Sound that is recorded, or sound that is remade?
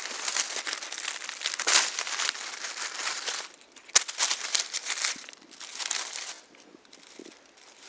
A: recorded